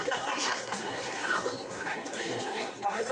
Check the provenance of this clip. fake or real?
fake